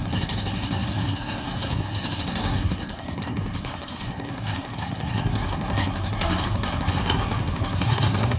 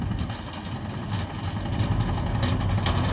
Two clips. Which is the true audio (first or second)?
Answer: second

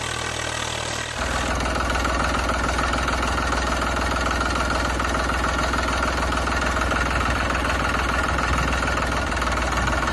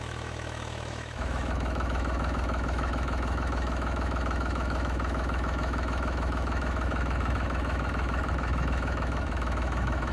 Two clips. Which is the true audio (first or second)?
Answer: first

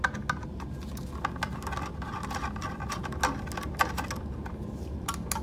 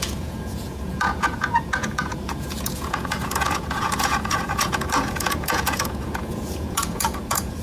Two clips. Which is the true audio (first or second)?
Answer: first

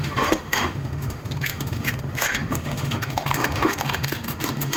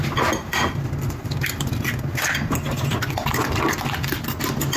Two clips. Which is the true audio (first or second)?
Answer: second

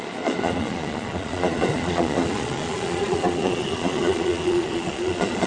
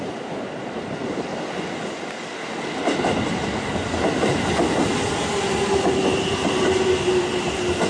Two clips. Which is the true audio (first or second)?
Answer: second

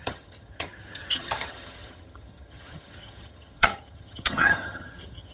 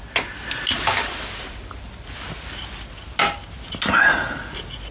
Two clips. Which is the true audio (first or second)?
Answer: second